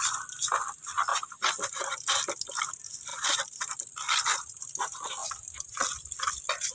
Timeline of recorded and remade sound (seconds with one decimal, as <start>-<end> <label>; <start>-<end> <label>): 0.0-1.1 remade; 1.1-2.7 recorded; 2.7-3.1 remade; 3.1-4.5 recorded; 4.5-5.2 remade; 5.2-6.3 recorded; 6.3-6.7 remade